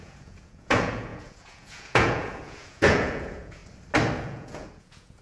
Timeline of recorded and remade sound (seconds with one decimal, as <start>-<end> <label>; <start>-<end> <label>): 0.0-3.6 remade; 3.6-4.2 recorded; 4.2-5.2 remade